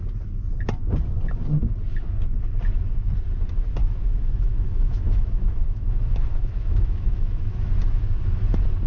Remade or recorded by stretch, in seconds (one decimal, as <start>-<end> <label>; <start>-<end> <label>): 0.0-3.8 recorded; 3.8-7.7 remade; 7.7-8.9 recorded